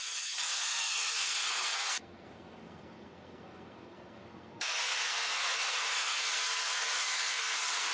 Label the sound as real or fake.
fake